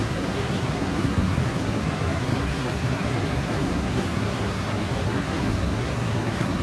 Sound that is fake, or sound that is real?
fake